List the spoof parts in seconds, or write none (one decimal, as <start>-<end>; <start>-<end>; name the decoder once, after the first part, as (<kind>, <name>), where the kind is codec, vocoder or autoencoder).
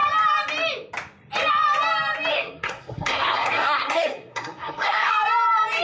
2.3-5.1 (codec, SNAC)